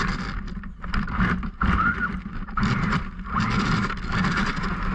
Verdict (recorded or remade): recorded